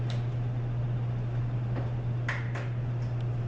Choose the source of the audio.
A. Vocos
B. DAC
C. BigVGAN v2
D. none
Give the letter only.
D